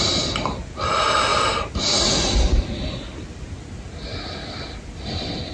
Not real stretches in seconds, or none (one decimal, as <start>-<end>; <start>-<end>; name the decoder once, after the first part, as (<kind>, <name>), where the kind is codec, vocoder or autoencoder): none